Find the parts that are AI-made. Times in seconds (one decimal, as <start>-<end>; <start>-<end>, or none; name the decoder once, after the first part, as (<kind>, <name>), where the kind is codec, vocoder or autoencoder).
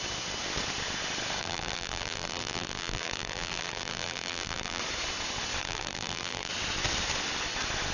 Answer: 1.4-4.8 (vocoder, BigVGAN v2); 5.6-6.5